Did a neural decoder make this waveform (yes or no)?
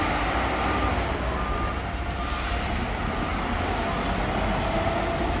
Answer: no